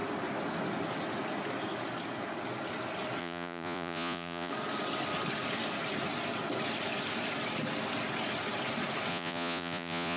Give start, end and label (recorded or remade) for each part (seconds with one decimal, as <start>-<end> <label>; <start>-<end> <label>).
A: 0.0-3.2 recorded; 3.2-4.5 remade; 4.5-9.1 recorded; 9.1-10.2 remade